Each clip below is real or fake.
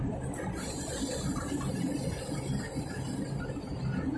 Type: real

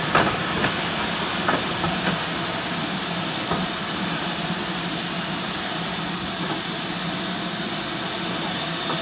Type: real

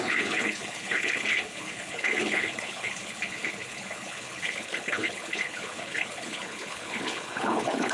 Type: fake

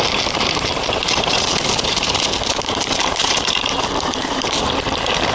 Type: fake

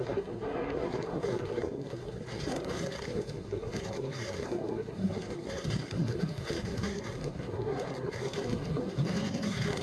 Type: fake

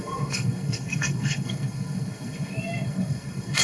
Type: fake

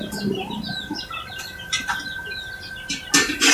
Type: real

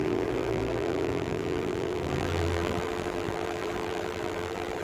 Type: fake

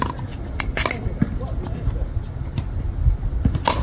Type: real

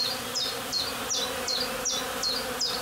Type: real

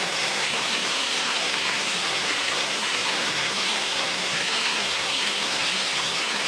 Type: fake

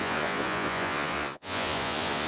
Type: fake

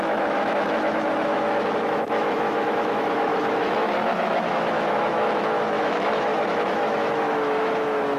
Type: fake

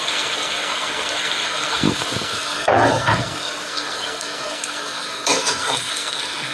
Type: fake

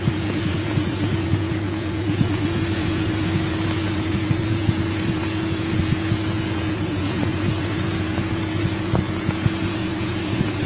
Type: fake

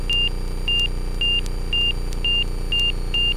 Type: real